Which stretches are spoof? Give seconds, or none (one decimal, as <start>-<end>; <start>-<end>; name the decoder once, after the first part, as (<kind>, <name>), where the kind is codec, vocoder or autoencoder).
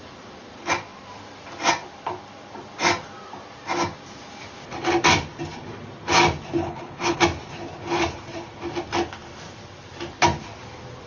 6.6-7.2 (codec, HILCodec)